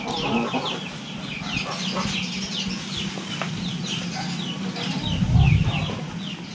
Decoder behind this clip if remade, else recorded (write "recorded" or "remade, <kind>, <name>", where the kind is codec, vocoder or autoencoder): recorded